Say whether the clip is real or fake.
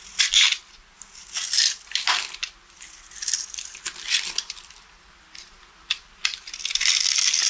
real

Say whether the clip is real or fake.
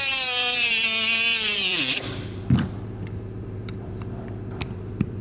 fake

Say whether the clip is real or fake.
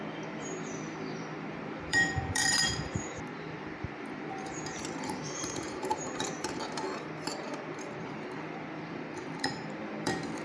fake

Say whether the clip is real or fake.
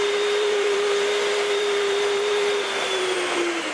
fake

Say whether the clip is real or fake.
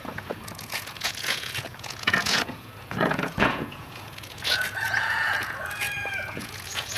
fake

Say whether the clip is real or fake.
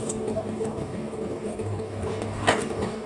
fake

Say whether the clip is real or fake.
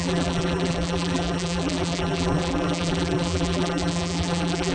fake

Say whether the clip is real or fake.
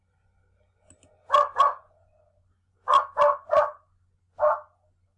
real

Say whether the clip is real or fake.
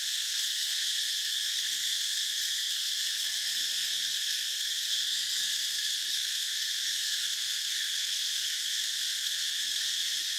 fake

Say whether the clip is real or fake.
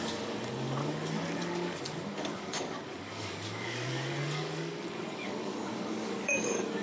fake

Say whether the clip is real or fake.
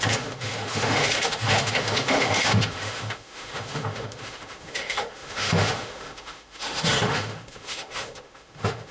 fake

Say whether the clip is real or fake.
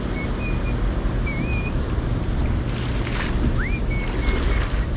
real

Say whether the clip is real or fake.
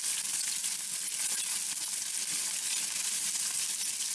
real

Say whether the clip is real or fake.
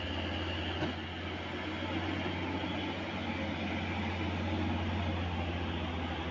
real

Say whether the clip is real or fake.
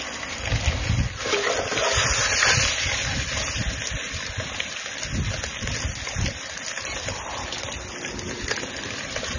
real